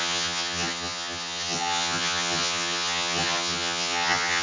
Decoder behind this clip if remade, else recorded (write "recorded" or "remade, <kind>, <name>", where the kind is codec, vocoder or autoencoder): remade, vocoder, HiFi-GAN